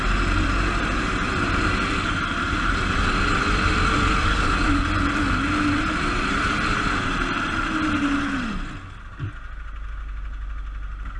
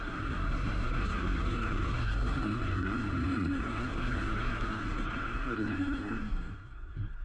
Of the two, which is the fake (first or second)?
second